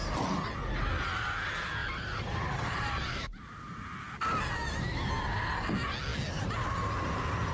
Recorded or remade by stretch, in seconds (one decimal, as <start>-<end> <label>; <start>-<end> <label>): 0.0-1.8 recorded; 1.8-3.8 remade; 3.8-7.5 recorded